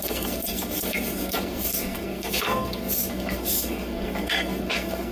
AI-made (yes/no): yes